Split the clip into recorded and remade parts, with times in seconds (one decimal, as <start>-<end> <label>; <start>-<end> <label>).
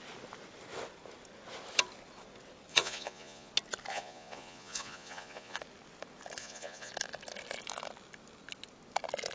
0.0-2.7 recorded; 2.7-3.5 remade; 3.5-3.9 recorded; 3.9-5.6 remade; 5.6-6.4 recorded; 6.4-6.9 remade; 6.9-9.3 recorded